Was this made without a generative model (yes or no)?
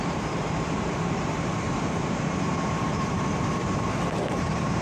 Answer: no